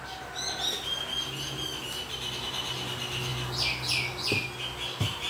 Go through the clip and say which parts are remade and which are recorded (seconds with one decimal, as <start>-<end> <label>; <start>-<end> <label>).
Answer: 0.0-5.3 recorded